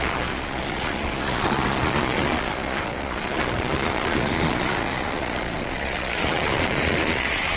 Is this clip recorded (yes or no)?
no